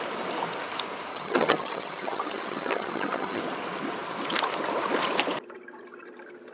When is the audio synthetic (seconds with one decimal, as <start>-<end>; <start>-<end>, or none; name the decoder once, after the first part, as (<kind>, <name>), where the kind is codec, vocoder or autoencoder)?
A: 1.1-3.4 (vocoder, HiFi-GAN)